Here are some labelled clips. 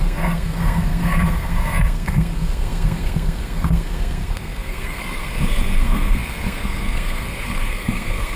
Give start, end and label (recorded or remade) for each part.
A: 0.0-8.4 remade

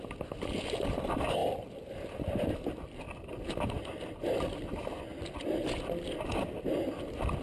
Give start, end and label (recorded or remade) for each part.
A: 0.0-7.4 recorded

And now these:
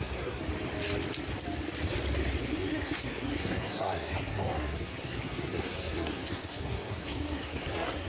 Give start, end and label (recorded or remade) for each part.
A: 0.0-0.4 remade; 0.4-2.4 recorded; 2.4-8.1 remade